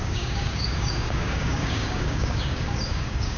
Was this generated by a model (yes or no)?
yes